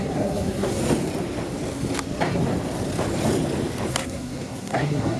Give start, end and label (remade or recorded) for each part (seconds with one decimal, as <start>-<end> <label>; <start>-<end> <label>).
0.0-0.8 remade; 0.8-3.9 recorded; 3.9-5.2 remade